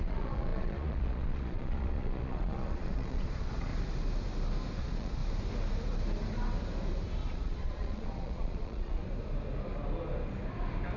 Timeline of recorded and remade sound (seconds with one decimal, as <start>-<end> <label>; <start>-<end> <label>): 0.0-3.7 remade; 3.7-4.8 recorded; 4.8-5.2 remade; 5.2-7.3 recorded; 7.3-9.0 remade; 9.0-11.0 recorded